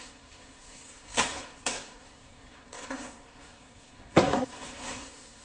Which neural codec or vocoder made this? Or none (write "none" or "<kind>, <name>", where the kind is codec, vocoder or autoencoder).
codec, SNAC